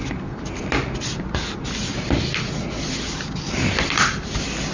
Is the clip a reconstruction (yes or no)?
no